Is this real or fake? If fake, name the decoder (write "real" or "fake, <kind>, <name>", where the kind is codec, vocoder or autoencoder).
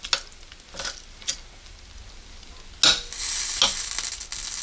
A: real